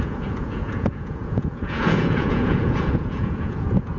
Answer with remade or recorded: remade